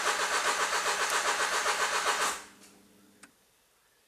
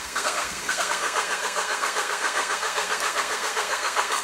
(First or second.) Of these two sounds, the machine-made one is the second